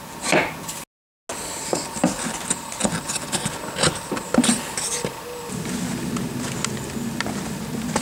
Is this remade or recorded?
recorded